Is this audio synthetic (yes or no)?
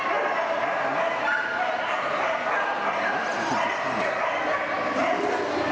no